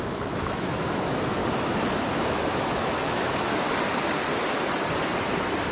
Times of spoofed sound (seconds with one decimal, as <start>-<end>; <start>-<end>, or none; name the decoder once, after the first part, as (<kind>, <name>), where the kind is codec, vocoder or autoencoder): 0.0-1.4 (autoencoder, DAC-VAE); 2.2-3.5